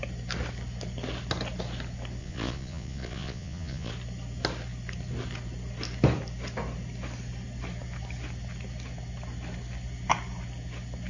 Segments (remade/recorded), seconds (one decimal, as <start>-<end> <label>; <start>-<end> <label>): 0.0-2.2 recorded; 2.2-3.9 remade; 3.9-11.1 recorded

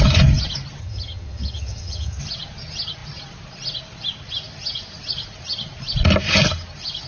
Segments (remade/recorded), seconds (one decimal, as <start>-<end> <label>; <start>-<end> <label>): 0.0-0.8 recorded; 0.8-2.2 remade; 2.2-7.1 recorded

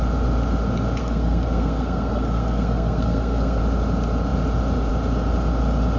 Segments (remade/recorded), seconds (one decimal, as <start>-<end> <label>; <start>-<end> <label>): 0.0-1.0 recorded; 1.0-3.6 remade; 3.6-6.0 recorded